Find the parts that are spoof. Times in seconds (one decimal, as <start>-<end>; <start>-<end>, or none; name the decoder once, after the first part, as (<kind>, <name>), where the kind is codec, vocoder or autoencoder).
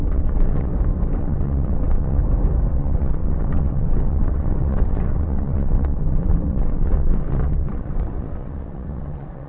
0.0-0.7 (vocoder, WaveNeXt); 1.2-2.2; 2.7-9.5